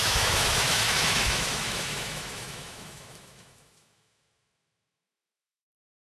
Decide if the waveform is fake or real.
fake